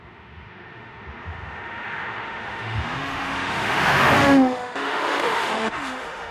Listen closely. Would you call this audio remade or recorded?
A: remade